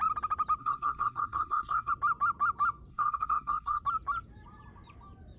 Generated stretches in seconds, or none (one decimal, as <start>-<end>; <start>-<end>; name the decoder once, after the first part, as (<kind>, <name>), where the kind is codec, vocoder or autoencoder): 0.6-1.9 (codec, SNAC); 2.9-3.8